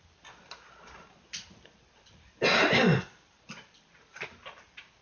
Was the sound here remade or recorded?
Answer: recorded